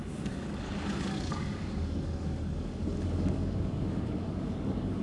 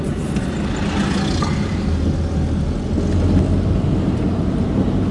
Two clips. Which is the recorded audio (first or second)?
second